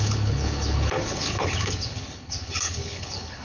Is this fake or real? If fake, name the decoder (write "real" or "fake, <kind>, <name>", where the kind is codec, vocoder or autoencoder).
fake, codec, HILCodec